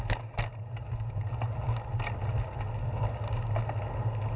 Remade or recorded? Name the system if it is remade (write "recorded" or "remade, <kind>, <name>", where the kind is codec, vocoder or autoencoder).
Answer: recorded